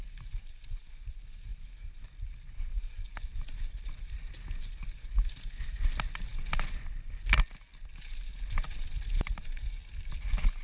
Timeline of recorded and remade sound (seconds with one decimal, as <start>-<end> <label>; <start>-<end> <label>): 0.0-10.6 recorded